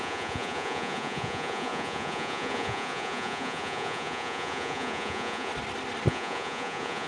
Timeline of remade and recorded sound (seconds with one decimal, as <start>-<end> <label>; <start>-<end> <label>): 0.0-5.5 remade; 5.5-6.1 recorded; 6.1-7.1 remade